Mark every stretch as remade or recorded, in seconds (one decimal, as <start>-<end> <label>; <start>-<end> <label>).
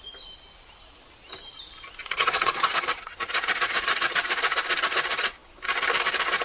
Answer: 0.0-2.0 recorded; 2.0-4.3 remade; 4.3-6.4 recorded